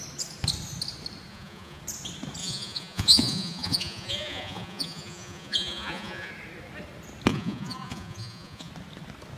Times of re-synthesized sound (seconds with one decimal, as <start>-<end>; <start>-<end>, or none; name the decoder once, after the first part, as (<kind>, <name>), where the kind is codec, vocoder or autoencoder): 1.3-1.8 (vocoder, Vocos); 2.4-6.3; 7.3-8.7